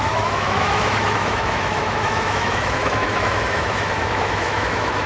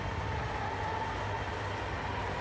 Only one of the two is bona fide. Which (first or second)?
second